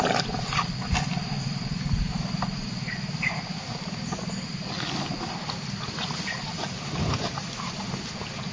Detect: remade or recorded recorded